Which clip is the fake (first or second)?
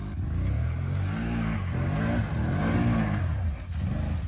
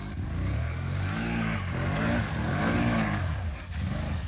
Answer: second